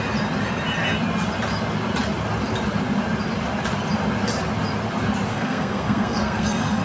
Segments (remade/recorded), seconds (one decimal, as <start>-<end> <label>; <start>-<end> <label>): 0.0-5.3 recorded; 5.3-6.8 remade